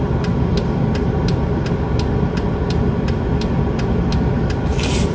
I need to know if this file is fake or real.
real